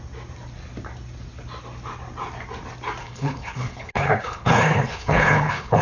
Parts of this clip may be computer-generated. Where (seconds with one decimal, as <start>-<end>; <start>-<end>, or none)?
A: 3.0-5.8